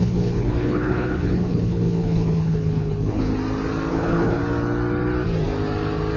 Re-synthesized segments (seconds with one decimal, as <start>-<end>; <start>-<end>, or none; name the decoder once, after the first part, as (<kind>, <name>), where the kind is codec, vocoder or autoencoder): 0.0-3.3 (codec, HILCodec); 3.9-4.4